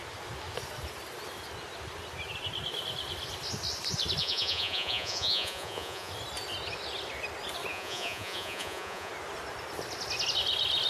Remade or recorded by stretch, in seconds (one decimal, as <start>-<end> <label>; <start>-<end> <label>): 0.0-4.2 recorded; 4.2-6.1 remade; 6.1-7.7 recorded; 7.7-9.1 remade; 9.1-10.9 recorded